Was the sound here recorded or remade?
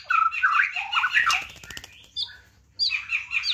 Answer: recorded